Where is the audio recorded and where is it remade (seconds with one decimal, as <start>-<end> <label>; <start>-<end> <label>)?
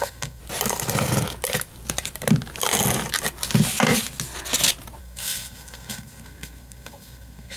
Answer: 0.0-0.4 remade; 0.4-5.0 recorded; 5.0-7.6 remade